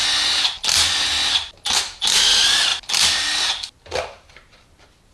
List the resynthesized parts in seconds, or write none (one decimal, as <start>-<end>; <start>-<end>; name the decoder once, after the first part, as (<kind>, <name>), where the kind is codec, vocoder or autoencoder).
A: none